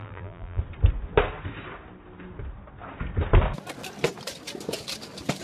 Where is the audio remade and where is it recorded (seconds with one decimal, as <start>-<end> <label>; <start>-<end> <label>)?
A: 0.0-0.6 remade; 0.6-5.4 recorded